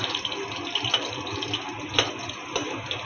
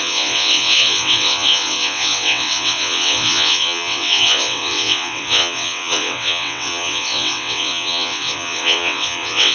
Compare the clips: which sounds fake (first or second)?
second